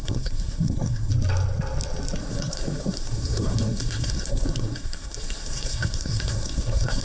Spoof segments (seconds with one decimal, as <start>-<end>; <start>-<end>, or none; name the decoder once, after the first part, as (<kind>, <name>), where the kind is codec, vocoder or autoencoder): 0.0-1.1 (codec, SNAC); 2.2-7.0